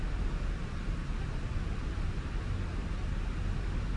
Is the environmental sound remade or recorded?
recorded